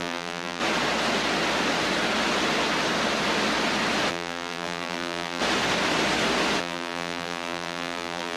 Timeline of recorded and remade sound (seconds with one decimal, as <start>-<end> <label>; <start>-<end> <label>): 0.0-0.6 remade; 0.6-4.1 recorded; 4.1-5.4 remade; 5.4-6.6 recorded; 6.6-8.4 remade